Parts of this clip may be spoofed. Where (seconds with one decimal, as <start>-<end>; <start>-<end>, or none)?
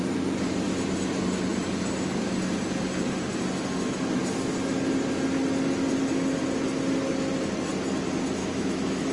8.4-9.1